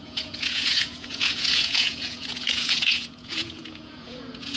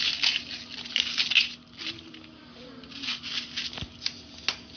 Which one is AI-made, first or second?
first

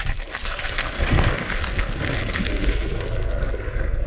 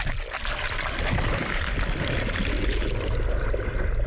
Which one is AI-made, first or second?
first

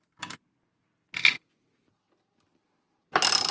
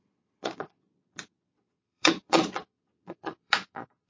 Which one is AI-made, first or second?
second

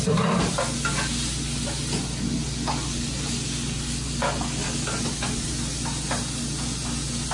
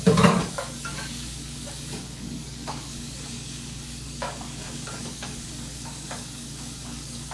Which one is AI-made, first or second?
second